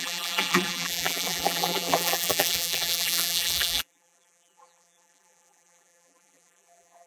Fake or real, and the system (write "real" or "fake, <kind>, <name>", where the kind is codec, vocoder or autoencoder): fake, vocoder, BigVGAN v2